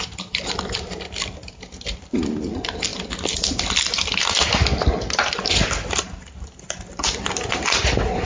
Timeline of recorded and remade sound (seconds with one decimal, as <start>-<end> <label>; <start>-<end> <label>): 0.0-8.3 recorded